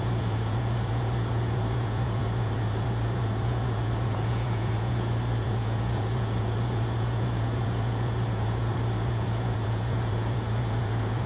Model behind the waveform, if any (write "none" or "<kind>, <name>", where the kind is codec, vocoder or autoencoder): vocoder, Vocos